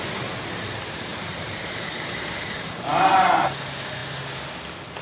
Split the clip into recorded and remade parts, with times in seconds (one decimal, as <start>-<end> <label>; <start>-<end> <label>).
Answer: 0.0-1.1 recorded; 1.1-3.4 remade; 3.4-5.0 recorded